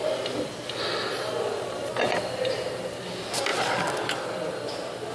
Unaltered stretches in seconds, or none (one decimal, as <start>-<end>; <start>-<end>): 0.0-5.1